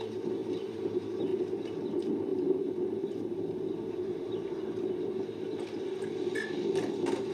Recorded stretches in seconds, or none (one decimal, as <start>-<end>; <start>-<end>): 0.0-7.3